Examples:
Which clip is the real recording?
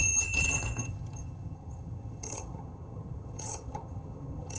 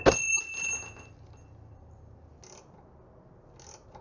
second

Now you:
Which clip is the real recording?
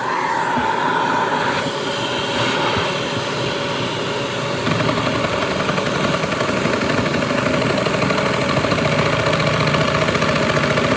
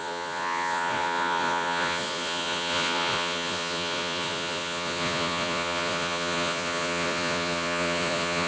first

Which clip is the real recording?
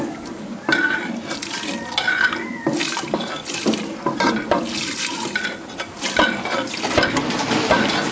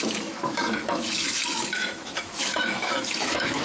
first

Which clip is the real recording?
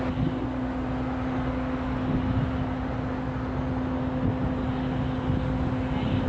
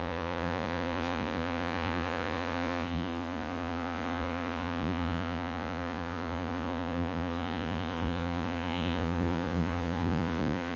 first